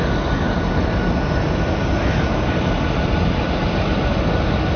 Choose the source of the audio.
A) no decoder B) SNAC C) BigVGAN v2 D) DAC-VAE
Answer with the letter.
A